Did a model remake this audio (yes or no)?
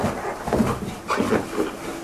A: no